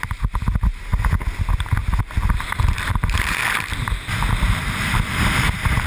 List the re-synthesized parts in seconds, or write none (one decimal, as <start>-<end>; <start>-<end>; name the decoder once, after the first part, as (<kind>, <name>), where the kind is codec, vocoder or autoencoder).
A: 0.0-0.9 (vocoder, BigVGAN v2); 2.0-3.4; 4.1-5.9